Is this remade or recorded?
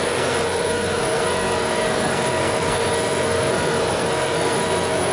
remade